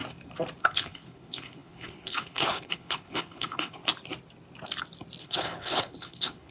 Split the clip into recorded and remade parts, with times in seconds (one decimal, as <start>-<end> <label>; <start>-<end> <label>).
0.0-0.6 recorded; 0.6-3.8 remade; 3.8-5.2 recorded; 5.2-6.5 remade